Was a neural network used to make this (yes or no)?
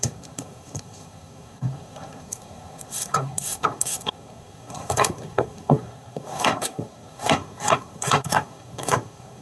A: yes